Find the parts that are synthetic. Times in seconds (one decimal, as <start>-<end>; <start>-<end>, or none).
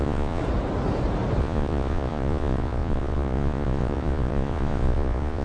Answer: 0.0-0.4; 1.4-5.4